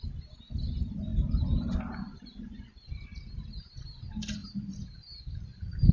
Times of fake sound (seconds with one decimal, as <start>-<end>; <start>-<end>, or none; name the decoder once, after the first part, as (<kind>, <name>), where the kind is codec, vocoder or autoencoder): none